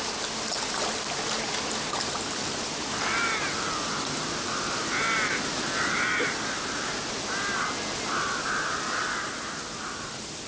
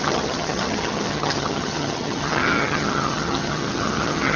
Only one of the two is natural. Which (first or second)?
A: first